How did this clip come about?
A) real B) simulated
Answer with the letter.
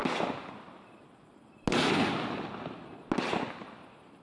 A